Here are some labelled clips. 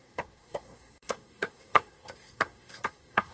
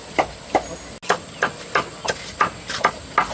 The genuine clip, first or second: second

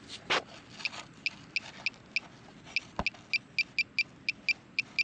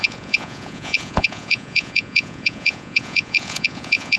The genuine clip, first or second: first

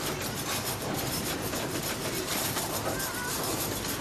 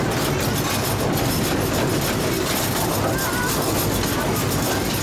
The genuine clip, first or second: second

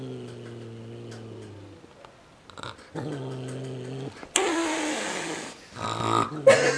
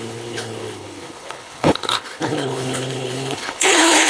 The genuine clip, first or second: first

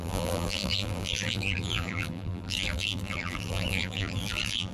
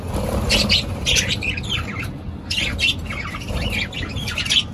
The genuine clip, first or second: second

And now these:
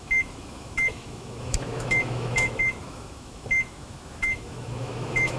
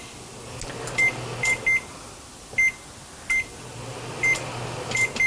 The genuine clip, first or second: second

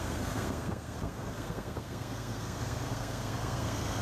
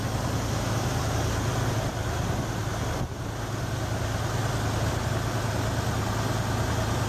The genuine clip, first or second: second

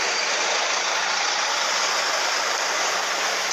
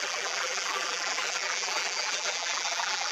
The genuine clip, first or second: first